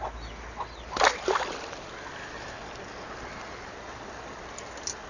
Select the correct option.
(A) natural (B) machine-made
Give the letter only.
A